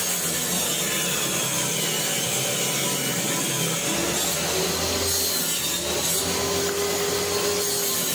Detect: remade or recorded recorded